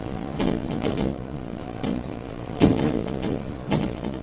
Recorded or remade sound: remade